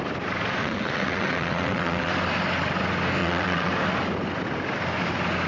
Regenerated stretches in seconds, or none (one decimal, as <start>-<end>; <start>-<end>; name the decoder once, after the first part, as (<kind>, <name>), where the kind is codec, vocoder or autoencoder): 0.6-2.1 (vocoder, WaveNeXt); 3.2-3.7